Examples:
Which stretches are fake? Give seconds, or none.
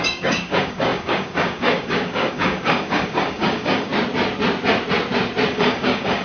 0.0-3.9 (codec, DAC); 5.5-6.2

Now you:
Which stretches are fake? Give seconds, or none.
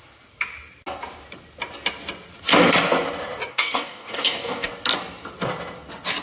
3.5-4.7 (codec, DAC)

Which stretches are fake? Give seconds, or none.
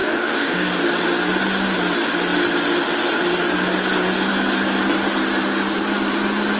0.0-0.8 (codec, DAC)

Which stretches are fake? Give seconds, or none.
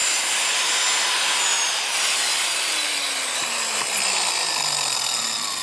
none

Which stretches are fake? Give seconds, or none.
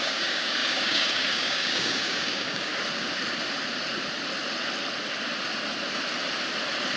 0.0-2.7 (codec, DAC)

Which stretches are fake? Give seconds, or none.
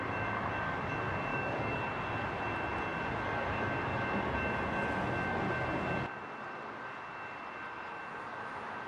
1.3-1.8 (codec, DAC)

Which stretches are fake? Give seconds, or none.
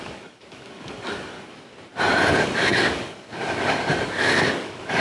0.0-1.7 (codec, DAC); 2.3-5.0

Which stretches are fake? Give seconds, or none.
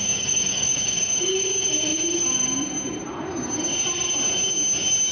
0.0-1.4 (codec, DAC)